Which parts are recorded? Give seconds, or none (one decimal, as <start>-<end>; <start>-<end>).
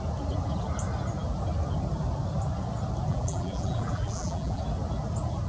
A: 0.0-3.1; 4.6-5.5